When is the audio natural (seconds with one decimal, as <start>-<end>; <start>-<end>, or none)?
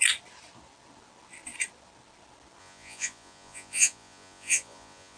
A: 0.0-2.6